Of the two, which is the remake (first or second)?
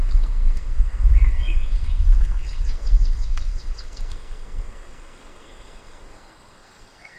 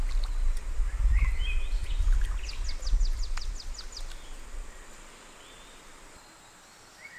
first